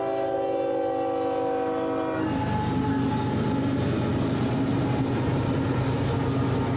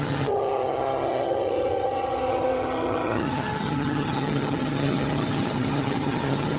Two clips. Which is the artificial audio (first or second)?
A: second